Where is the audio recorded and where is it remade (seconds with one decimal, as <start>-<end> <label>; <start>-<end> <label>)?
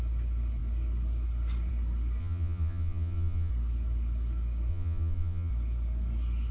0.0-2.2 recorded; 2.2-3.5 remade; 3.5-4.7 recorded; 4.7-5.5 remade; 5.5-6.5 recorded